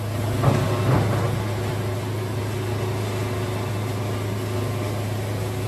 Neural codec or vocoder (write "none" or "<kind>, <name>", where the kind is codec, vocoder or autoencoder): none